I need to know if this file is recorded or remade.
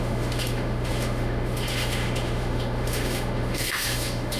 remade